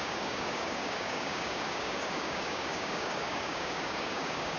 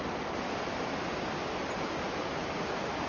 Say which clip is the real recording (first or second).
second